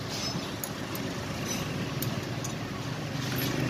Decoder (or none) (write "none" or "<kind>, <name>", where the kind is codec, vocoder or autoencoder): none